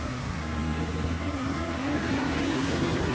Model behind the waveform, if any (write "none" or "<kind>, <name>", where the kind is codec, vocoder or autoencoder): codec, SNAC